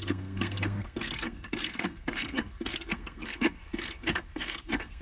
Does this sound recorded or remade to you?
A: remade